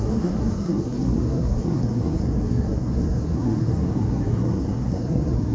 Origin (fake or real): fake